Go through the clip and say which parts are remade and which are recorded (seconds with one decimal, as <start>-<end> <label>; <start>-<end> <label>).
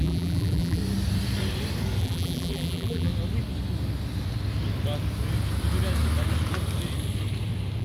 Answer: 0.0-0.8 remade; 0.8-2.0 recorded; 2.0-3.1 remade; 3.1-7.8 recorded